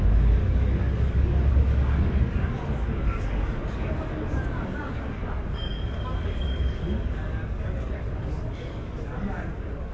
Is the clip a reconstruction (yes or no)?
yes